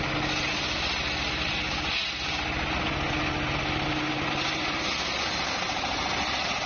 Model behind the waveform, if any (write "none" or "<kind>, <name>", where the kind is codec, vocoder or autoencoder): none